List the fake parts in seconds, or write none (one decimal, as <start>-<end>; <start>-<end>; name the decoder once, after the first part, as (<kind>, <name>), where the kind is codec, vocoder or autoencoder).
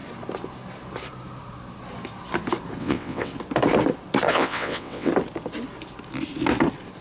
2.8-3.3 (vocoder, WaveNeXt); 4.3-5.1